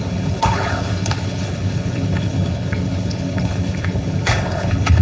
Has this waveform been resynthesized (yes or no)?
yes